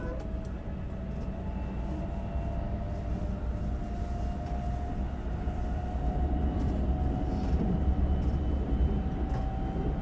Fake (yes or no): no